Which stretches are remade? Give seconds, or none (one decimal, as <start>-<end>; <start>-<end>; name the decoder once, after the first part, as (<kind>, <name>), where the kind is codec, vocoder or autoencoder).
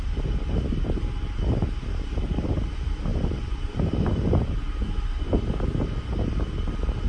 3.1-5.3 (vocoder, BigVGAN v2)